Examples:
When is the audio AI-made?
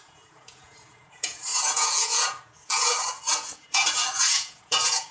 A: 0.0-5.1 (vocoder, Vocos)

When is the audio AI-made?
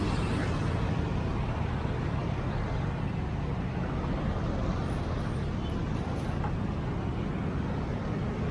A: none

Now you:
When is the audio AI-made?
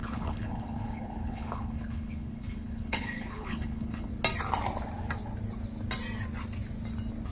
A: 0.0-4.1 (codec, HILCodec)